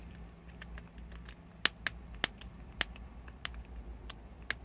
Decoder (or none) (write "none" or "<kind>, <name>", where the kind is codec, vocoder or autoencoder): none